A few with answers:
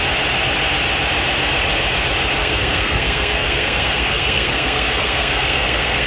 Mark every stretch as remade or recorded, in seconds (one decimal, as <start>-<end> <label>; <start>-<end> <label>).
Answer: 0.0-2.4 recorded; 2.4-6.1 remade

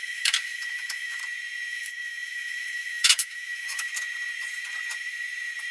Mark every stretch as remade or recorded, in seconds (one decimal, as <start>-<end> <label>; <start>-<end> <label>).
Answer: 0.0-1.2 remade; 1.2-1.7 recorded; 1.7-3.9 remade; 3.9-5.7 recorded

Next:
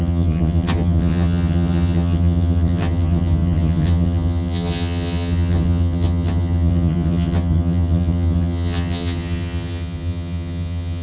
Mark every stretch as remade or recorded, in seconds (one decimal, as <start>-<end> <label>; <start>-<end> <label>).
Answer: 0.0-11.0 remade